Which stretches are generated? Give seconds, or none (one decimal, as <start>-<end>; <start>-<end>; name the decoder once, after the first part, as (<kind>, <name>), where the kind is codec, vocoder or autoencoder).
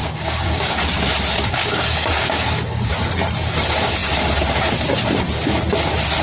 0.0-0.7 (codec, DAC); 1.6-2.9